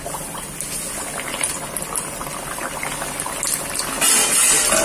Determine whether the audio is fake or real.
real